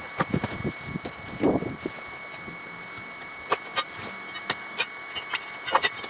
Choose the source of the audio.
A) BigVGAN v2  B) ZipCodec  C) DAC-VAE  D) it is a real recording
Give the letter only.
D